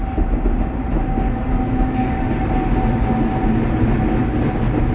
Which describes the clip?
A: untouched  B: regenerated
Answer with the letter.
A